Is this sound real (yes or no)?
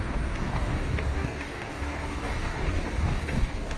no